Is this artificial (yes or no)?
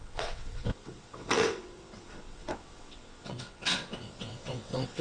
yes